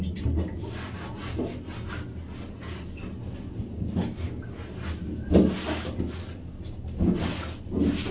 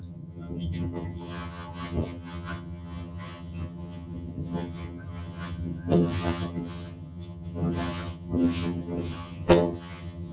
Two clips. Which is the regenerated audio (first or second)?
second